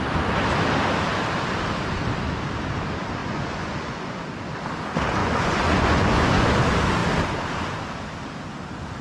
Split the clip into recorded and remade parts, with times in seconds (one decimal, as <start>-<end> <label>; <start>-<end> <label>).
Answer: 0.0-3.2 recorded; 3.2-4.2 remade; 4.2-5.2 recorded; 5.2-6.6 remade; 6.6-9.0 recorded